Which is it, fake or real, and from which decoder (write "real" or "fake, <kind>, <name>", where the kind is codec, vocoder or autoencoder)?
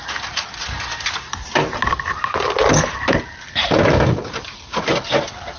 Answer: real